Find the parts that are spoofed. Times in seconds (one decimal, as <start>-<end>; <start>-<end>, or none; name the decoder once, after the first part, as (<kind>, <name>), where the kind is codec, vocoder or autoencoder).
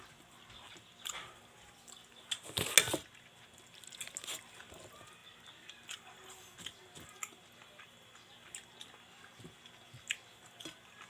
none